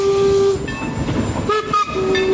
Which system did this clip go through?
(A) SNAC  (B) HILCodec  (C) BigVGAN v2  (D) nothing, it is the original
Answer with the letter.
D